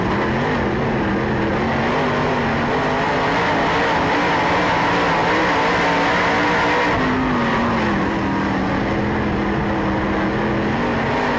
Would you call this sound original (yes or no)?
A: yes